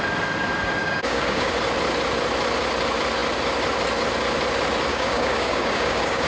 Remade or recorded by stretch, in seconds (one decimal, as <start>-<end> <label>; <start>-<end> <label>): 0.0-0.8 recorded; 0.8-1.5 remade; 1.5-4.9 recorded; 4.9-6.3 remade